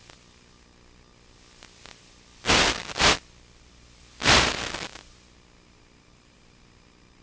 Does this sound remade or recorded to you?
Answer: recorded